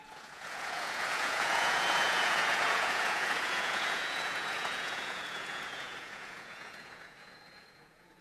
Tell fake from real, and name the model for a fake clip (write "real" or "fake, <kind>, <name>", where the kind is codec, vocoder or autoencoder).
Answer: fake, vocoder, Vocos